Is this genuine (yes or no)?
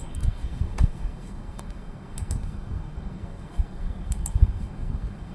no